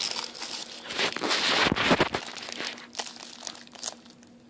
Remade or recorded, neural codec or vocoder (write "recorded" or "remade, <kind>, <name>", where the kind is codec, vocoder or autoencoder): recorded